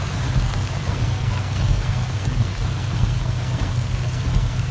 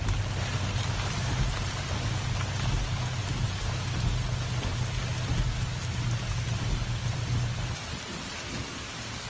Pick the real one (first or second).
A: second